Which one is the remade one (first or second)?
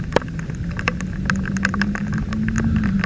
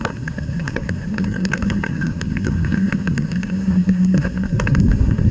second